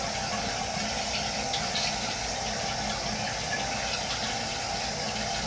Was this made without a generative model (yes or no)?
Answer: yes